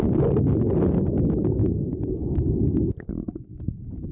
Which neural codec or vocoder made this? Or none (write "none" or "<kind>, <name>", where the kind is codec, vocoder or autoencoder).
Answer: none